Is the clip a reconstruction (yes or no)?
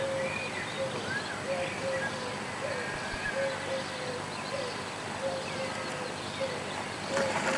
yes